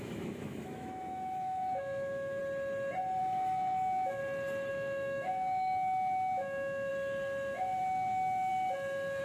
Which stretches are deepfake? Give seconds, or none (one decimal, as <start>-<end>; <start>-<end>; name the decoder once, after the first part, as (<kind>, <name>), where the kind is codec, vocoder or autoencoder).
0.0-2.4 (autoencoder, DAC-VAE); 3.2-4.2; 4.7-6.9; 7.8-8.5